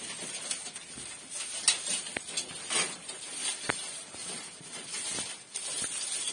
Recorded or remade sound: recorded